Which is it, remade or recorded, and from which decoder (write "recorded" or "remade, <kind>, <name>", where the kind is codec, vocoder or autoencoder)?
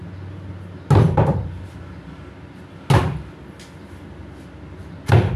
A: recorded